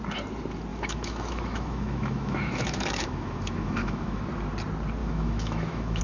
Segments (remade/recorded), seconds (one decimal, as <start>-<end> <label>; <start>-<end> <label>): 0.0-0.7 recorded; 0.7-4.2 remade; 4.2-5.0 recorded; 5.0-6.0 remade